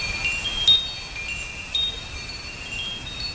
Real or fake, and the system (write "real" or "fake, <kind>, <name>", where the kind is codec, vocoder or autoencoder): real